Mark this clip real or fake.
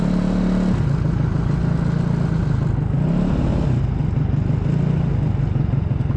real